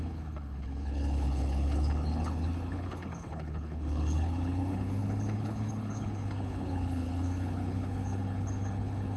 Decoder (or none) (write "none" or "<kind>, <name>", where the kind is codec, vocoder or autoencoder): codec, HILCodec